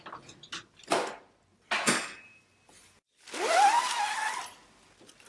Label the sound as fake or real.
real